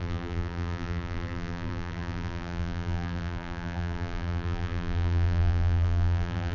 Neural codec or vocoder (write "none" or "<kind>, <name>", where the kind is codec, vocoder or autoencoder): vocoder, BigVGAN v2